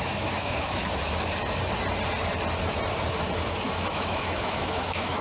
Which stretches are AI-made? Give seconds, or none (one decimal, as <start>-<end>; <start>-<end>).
0.0-0.8; 3.9-5.2